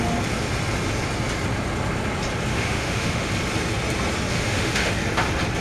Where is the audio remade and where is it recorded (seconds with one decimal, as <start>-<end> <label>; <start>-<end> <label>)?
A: 0.0-2.5 recorded; 2.5-3.3 remade; 3.3-4.3 recorded; 4.3-4.9 remade; 4.9-5.6 recorded